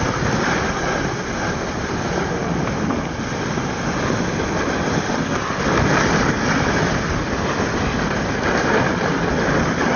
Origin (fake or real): real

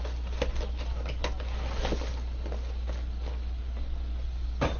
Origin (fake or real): real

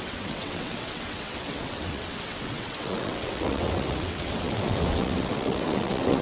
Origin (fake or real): fake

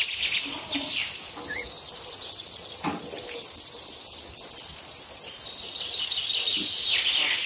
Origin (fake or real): real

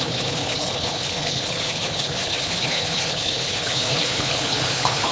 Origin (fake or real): fake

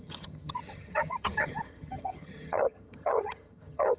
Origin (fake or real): fake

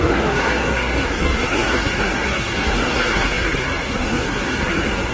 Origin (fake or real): fake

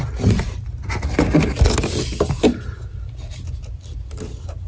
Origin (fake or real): real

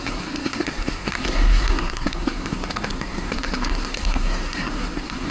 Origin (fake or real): fake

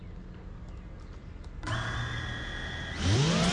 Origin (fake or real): real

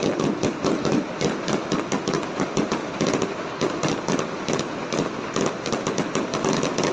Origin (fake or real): real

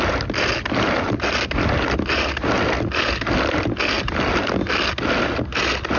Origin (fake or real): real